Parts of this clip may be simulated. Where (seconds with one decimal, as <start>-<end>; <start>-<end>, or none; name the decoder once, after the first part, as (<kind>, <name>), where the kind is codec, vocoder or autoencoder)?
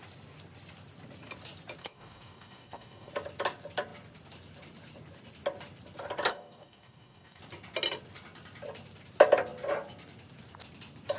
1.8-3.1 (codec, DAC); 6.3-7.4